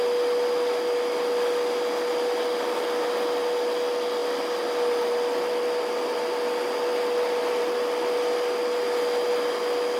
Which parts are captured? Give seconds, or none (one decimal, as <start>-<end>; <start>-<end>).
0.0-10.0